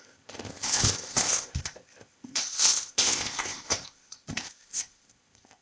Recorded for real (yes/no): no